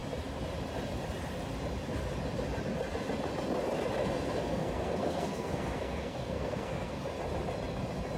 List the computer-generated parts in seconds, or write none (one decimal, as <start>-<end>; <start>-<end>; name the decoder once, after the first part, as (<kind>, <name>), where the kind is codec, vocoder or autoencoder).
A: 4.0-7.0 (codec, SNAC)